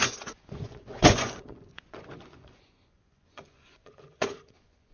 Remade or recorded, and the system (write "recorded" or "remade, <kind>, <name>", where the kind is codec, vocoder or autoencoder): remade, vocoder, Vocos